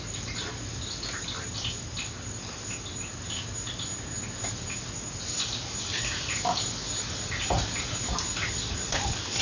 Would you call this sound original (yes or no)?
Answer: yes